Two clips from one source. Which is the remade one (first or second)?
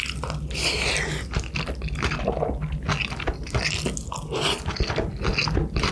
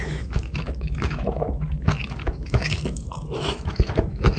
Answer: second